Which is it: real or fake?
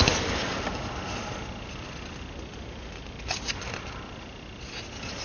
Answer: real